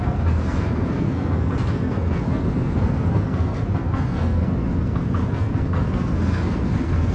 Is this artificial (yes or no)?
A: yes